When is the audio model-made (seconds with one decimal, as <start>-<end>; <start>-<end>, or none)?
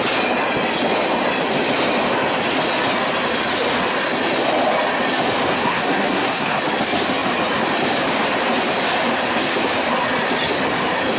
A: 5.5-6.6